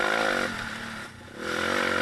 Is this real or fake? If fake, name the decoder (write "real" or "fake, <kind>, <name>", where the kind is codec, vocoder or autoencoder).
real